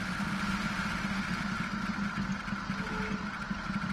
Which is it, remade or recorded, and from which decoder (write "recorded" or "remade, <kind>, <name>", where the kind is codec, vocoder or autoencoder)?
recorded